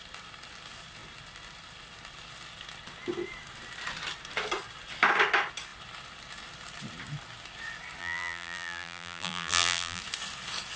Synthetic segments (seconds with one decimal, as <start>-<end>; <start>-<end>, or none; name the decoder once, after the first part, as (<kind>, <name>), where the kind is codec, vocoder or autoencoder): 8.0-10.0 (vocoder, BigVGAN v2)